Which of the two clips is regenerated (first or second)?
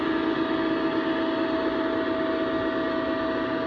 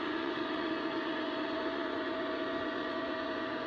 second